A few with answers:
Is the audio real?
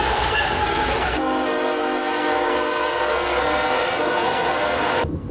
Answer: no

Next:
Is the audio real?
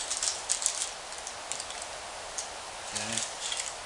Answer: yes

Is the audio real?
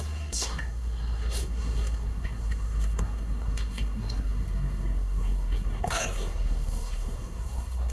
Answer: no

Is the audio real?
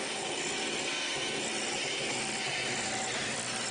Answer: yes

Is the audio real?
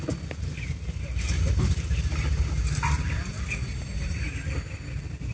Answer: yes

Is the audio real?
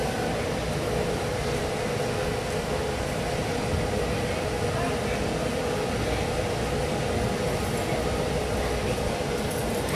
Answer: yes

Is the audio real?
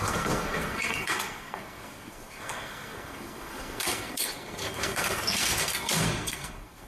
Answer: no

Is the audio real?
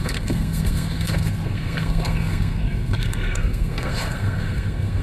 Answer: no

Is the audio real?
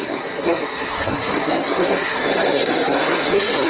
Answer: no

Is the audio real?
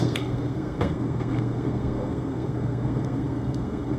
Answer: no